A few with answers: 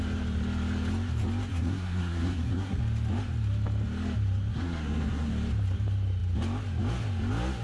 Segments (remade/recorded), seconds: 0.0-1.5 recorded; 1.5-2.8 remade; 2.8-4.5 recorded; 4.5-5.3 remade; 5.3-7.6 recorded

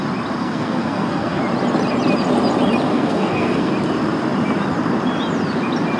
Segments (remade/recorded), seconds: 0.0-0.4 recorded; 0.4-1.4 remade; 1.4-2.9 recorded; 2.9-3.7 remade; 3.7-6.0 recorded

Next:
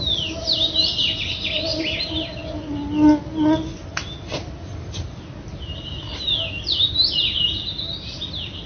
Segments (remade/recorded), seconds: 0.0-8.7 recorded

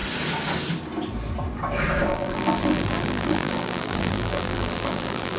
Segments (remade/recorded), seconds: 0.0-2.1 recorded; 2.1-5.4 remade